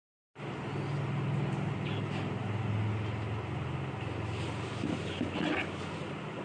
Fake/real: real